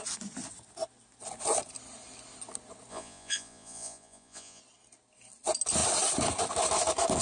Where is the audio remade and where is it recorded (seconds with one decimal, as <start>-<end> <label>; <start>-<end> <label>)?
0.0-2.9 recorded; 2.9-4.6 remade; 4.6-7.2 recorded